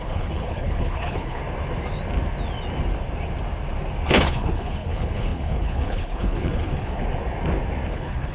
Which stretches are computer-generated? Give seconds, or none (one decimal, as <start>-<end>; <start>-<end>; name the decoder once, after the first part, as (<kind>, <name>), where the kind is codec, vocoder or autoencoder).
0.0-1.4 (codec, HILCodec); 4.1-7.0; 7.9-8.3